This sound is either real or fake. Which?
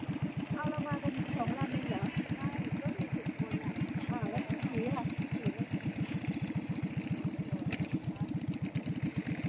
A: real